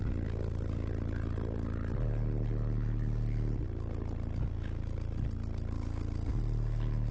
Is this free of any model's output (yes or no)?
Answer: yes